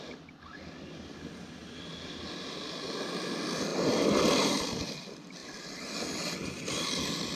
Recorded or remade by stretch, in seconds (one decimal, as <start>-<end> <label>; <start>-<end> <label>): 0.0-7.3 recorded